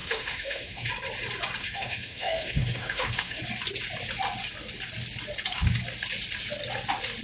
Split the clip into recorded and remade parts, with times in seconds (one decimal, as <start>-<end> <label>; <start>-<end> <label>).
0.0-0.9 remade; 0.9-1.6 recorded; 1.6-3.4 remade; 3.4-7.2 recorded